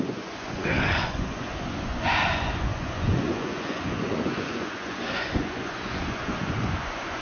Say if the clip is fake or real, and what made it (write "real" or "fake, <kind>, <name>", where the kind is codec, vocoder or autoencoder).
fake, vocoder, Vocos